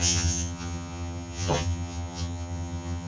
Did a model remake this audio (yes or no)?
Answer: yes